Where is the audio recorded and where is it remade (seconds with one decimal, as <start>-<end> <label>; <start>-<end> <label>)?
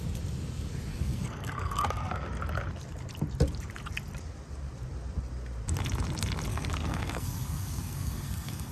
0.0-0.9 recorded; 0.9-2.3 remade; 2.3-6.5 recorded; 6.5-8.7 remade